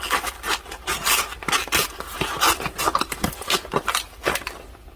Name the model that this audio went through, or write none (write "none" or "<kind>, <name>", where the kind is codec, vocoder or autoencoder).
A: none